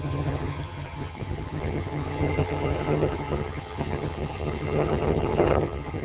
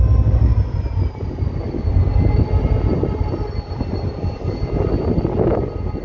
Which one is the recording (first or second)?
second